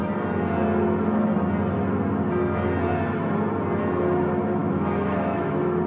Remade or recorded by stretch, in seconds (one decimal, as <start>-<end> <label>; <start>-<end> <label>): 0.0-4.6 recorded; 4.6-5.5 remade; 5.5-5.9 recorded